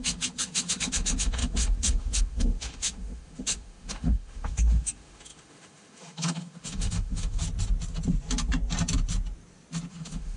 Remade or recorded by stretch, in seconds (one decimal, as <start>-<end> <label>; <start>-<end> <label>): 0.0-7.4 remade; 7.4-9.9 recorded; 9.9-10.4 remade